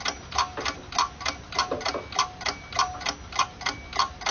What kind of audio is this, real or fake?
real